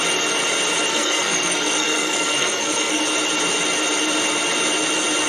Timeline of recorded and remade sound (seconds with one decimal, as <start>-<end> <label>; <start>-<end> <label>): 0.0-0.9 recorded; 0.9-3.0 remade; 3.0-5.3 recorded